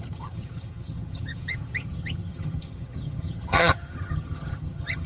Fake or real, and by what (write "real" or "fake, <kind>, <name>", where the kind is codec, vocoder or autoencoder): fake, vocoder, HiFi-GAN